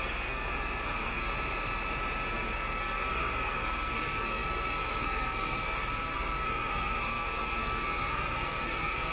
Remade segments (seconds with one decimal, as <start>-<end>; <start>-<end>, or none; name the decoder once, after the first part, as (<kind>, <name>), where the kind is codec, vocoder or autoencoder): 0.0-1.3 (codec, SNAC); 2.3-9.1